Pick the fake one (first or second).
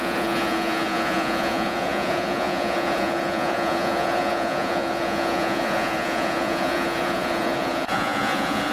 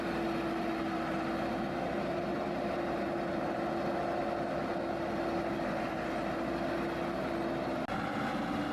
first